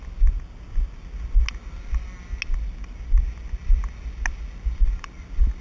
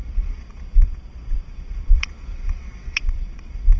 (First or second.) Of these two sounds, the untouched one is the first